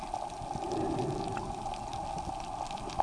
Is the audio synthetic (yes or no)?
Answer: no